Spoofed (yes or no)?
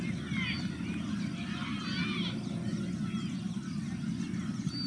no